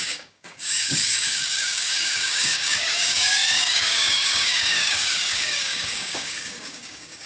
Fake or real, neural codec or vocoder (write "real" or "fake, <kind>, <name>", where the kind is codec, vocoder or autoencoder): fake, codec, DAC